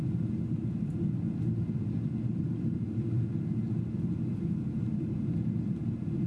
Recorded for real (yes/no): yes